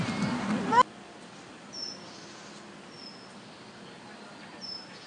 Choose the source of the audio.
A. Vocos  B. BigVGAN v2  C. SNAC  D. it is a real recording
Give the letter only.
D